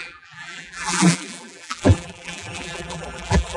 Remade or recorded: remade